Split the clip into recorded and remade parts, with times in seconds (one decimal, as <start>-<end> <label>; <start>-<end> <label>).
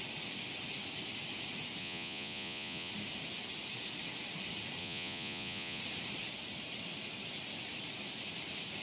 0.0-1.8 recorded; 1.8-2.9 remade; 2.9-4.8 recorded; 4.8-5.8 remade; 5.8-8.8 recorded